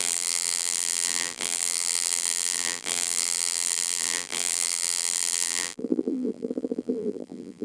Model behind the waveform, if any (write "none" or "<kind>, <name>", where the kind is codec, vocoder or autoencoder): vocoder, BigVGAN v2